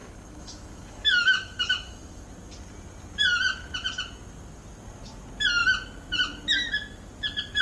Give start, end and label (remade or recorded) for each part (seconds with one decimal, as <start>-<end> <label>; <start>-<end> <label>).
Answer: 0.0-2.2 remade; 2.2-7.6 recorded